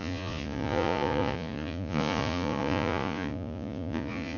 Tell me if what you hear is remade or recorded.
remade